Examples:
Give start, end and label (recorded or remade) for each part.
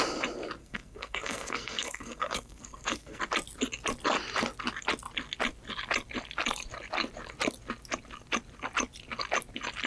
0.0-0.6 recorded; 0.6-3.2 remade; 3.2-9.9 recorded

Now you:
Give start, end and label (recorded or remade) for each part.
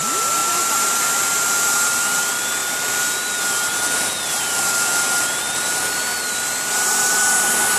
0.0-7.8 recorded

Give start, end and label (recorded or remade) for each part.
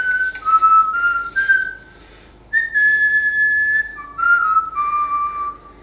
0.0-5.8 recorded